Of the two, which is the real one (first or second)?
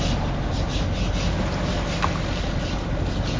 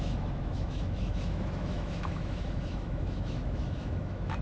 first